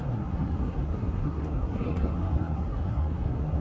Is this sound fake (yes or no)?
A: yes